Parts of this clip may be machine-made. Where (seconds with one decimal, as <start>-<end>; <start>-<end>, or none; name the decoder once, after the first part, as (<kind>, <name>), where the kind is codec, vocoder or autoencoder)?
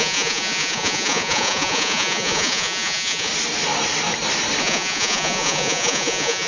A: 0.0-3.3 (vocoder, Vocos); 4.6-6.5